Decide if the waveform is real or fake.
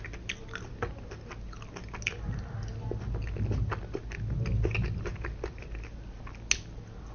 real